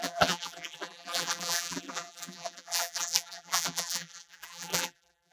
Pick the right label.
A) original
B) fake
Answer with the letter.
B